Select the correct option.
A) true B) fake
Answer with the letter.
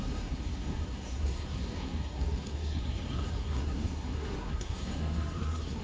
B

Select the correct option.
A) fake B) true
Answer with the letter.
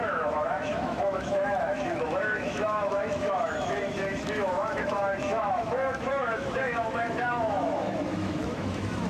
A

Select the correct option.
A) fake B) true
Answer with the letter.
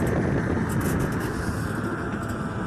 B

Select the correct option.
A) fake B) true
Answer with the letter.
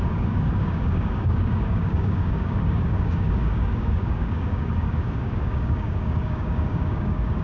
A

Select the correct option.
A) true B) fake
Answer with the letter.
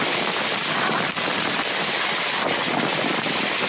A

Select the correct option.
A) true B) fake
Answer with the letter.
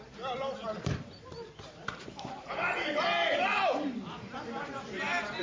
B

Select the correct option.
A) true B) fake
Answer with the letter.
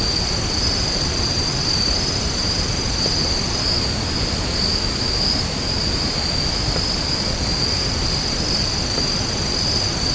A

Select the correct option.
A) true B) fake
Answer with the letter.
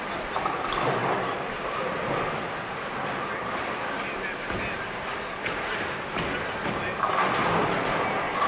A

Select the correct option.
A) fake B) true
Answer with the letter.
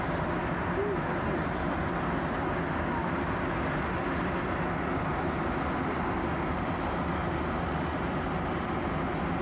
B